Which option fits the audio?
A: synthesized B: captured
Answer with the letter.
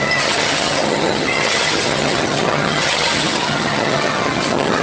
A